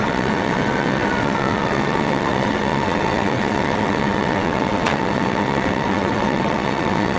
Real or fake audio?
fake